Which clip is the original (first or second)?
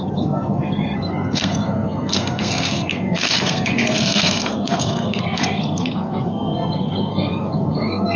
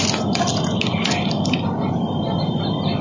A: second